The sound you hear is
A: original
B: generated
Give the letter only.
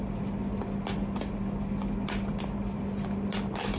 A